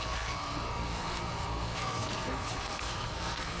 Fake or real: fake